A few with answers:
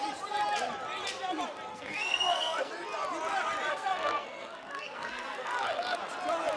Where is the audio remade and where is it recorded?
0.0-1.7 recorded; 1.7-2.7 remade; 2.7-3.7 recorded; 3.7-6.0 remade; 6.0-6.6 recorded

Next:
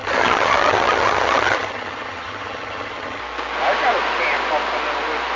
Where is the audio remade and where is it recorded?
0.0-3.2 remade; 3.2-5.4 recorded

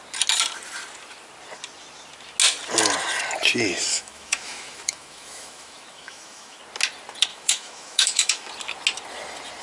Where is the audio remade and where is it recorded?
0.0-3.9 recorded; 3.9-6.6 remade; 6.6-7.3 recorded; 7.3-8.5 remade; 8.5-9.6 recorded